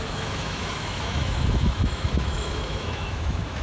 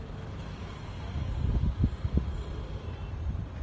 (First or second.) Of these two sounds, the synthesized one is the first